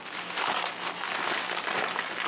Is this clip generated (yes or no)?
no